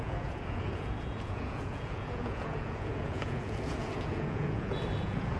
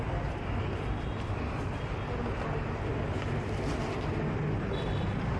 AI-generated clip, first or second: first